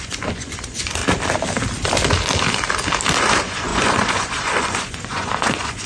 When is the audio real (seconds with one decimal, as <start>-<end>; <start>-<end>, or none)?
1.0-3.2